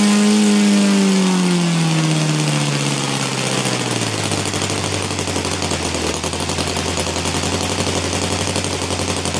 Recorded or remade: recorded